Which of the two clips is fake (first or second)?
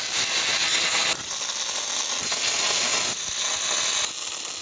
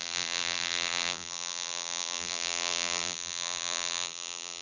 second